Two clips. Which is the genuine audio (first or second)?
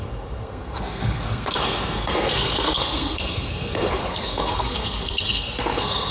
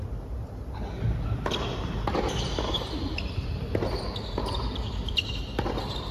second